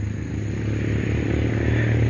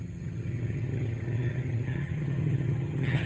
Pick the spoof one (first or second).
second